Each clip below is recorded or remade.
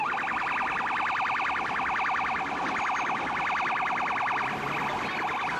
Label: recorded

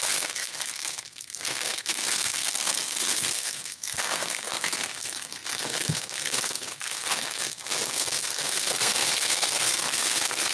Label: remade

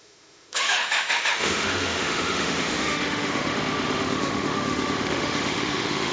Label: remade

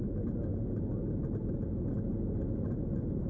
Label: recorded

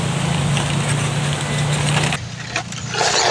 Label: recorded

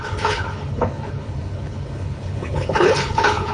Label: remade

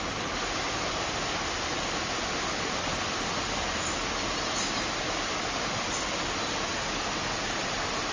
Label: recorded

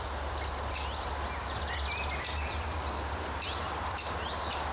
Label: recorded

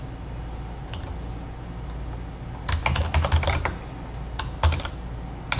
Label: recorded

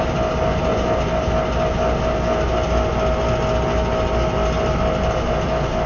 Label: recorded